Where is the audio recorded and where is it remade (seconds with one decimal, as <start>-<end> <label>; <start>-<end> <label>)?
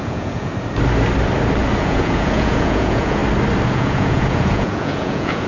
0.0-0.5 remade; 0.5-1.8 recorded; 1.8-3.2 remade; 3.2-3.7 recorded; 3.7-5.5 remade